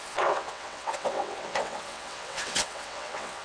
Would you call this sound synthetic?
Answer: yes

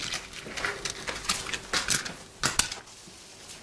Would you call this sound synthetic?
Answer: no